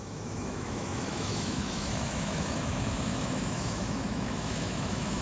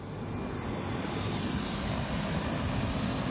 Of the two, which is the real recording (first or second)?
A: second